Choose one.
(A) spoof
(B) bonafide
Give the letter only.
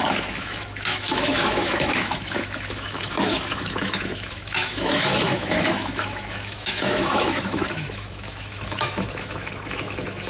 A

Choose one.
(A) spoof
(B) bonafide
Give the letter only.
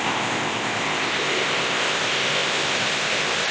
A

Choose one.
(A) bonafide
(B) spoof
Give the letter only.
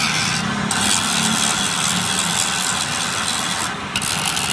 A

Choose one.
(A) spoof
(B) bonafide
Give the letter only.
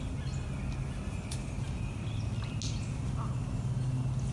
B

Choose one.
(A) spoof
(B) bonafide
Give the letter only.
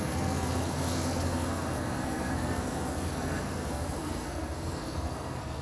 A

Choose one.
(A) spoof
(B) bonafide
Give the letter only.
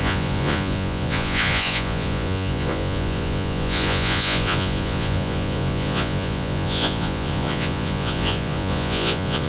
A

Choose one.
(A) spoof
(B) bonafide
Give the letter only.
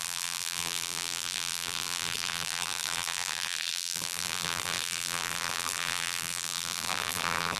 A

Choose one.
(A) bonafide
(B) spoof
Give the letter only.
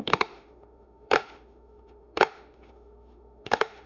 B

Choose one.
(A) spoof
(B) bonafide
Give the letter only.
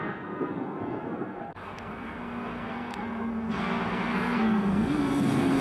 A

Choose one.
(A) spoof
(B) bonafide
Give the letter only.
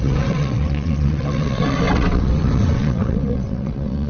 A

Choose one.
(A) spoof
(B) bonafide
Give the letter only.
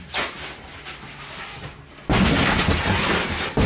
B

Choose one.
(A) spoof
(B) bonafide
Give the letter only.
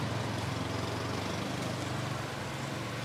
B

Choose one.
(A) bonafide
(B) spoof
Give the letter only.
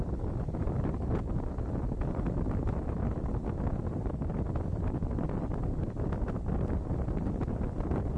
A